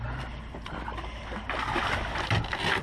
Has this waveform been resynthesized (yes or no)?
no